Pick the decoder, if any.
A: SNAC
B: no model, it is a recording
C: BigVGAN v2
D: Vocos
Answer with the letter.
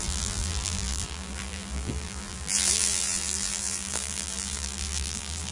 C